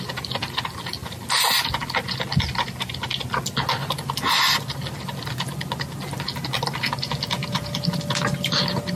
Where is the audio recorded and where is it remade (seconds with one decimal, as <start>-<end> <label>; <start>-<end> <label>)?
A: 0.0-9.0 recorded